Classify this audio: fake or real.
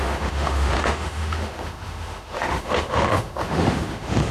fake